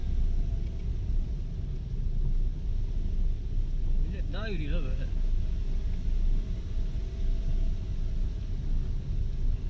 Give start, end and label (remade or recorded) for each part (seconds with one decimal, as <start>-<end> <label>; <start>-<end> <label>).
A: 0.0-9.7 recorded